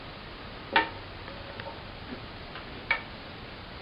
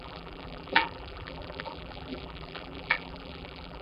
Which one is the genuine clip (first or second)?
first